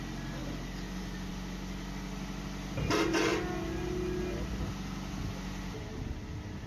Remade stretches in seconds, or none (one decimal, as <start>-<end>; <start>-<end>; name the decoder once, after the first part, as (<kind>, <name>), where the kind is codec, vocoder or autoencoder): none